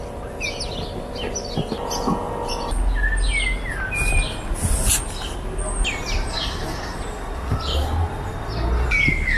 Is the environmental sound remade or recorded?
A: recorded